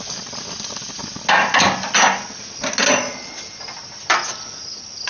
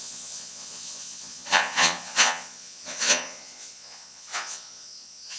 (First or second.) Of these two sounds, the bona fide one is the first